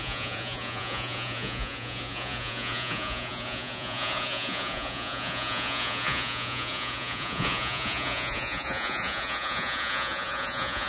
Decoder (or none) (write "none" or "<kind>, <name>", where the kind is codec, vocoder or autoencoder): vocoder, Vocos